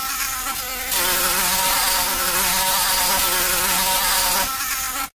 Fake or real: real